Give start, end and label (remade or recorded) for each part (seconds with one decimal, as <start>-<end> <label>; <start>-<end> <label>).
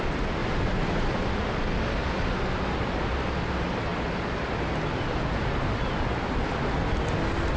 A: 0.0-0.4 recorded; 0.4-1.2 remade; 1.2-7.6 recorded